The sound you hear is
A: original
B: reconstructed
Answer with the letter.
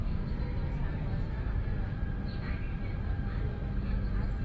A